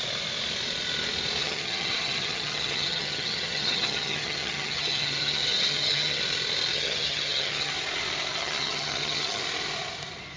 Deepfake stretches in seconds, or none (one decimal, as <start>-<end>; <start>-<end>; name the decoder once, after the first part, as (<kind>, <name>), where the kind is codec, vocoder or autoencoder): 1.4-6.2 (vocoder, HiFi-GAN); 6.7-7.7; 8.3-9.4